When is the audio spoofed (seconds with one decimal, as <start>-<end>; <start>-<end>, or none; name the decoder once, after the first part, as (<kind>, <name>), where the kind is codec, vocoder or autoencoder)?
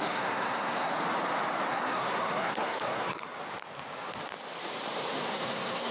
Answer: 0.0-0.9 (codec, SNAC); 1.7-3.4; 5.3-5.9